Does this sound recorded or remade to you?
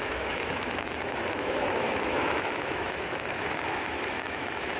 remade